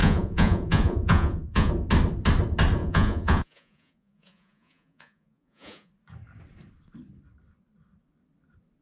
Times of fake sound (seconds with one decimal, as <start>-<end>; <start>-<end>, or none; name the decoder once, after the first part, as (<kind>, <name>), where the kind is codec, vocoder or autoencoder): 0.0-1.7 (vocoder, Vocos); 2.8-5.9